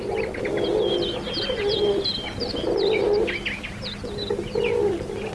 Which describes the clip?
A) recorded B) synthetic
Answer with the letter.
A